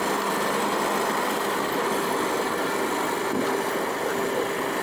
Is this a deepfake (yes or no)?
no